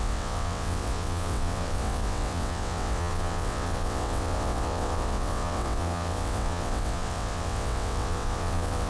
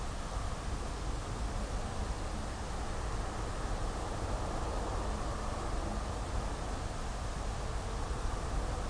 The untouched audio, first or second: second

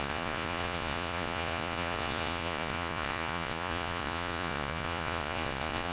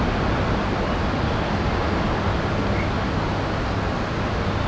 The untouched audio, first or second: second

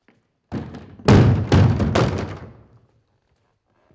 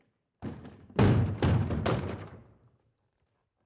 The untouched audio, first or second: first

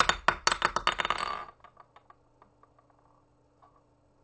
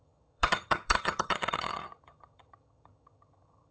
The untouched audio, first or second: first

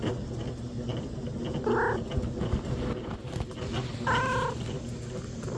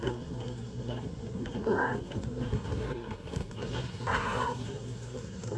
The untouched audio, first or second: first